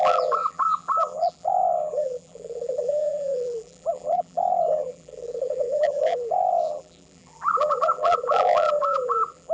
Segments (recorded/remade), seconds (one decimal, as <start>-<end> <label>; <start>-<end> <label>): 0.0-9.5 remade